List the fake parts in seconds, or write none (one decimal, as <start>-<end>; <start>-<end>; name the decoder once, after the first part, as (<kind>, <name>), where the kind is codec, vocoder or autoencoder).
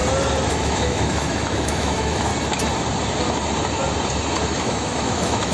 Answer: 0.5-2.3 (autoencoder, DAC-VAE); 4.6-5.5